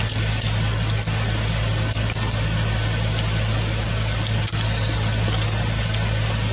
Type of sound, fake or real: real